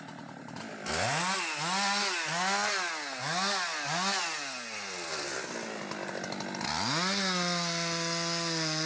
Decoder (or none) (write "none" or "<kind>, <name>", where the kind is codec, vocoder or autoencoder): none